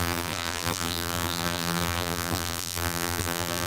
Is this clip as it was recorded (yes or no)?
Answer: no